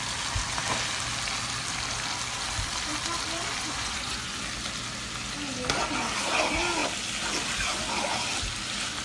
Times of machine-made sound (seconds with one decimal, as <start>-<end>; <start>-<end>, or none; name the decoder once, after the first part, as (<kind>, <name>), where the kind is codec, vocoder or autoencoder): 3.6-4.3 (vocoder, Vocos)